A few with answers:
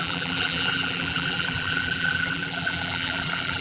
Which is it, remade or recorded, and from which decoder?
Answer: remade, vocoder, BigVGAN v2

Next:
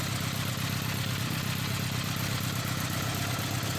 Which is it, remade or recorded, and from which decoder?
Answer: recorded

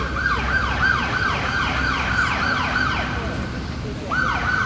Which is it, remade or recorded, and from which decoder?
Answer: remade, vocoder, BigVGAN v2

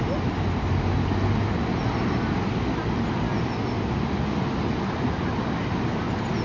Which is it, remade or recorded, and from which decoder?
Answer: recorded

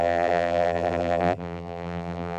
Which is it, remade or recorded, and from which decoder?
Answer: remade, vocoder, BigVGAN v2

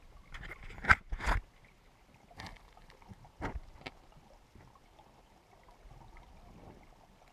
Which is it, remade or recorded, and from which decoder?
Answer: recorded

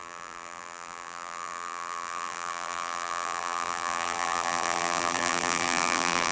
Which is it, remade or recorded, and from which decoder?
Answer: remade, vocoder, BigVGAN v2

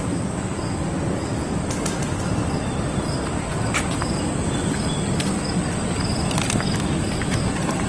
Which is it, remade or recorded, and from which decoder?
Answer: recorded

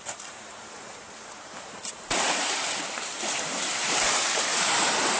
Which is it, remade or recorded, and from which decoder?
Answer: remade, vocoder, BigVGAN v2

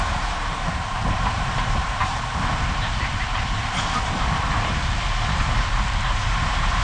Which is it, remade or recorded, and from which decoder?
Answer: remade, vocoder, BigVGAN v2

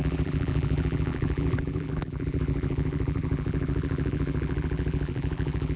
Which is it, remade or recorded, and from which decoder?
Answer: remade, vocoder, BigVGAN v2